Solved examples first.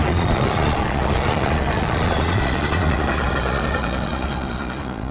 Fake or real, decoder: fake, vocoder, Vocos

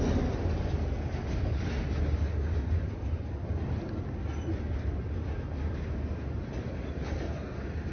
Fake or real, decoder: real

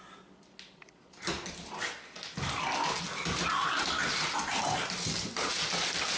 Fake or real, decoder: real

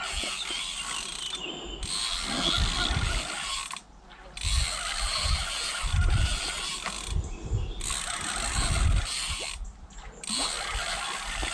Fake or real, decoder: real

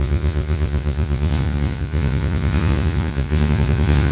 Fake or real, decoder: fake, vocoder, Vocos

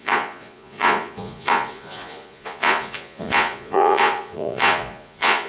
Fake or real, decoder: fake, vocoder, Vocos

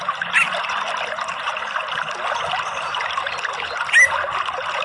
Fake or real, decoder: real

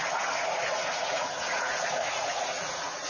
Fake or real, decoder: fake, vocoder, Vocos